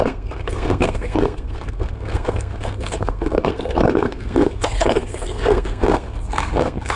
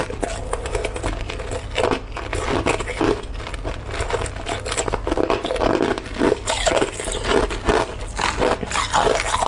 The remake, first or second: first